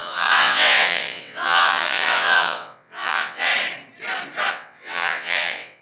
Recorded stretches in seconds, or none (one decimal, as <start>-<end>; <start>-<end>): 3.5-4.5